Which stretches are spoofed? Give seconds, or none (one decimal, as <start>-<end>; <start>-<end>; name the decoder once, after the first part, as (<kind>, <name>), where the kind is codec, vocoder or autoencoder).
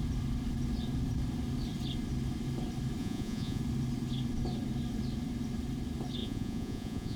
3.0-3.6 (vocoder, Vocos); 6.2-7.2